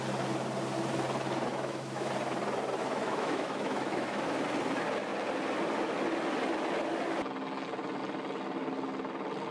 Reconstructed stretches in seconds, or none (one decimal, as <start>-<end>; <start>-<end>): 1.5-2.1; 2.8-4.4